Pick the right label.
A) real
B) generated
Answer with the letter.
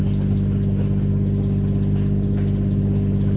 A